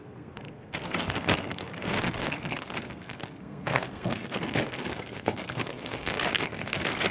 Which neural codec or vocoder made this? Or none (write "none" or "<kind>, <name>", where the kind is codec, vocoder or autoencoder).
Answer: codec, SNAC